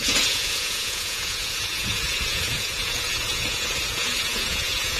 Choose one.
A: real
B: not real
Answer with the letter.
B